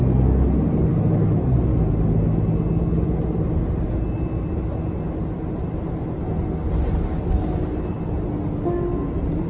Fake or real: real